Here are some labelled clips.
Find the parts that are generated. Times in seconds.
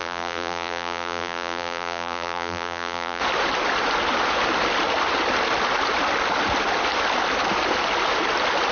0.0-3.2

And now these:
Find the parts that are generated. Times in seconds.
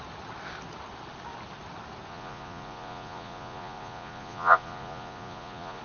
2.1-5.8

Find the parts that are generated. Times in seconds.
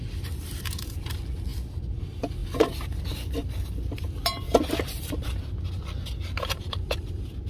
none